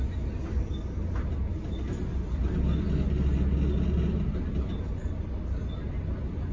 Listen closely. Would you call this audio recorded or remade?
recorded